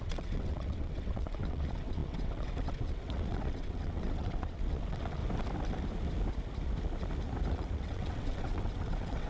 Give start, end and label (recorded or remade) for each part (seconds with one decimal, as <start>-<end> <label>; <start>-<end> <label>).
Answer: 0.0-5.2 remade; 5.2-7.5 recorded; 7.5-9.3 remade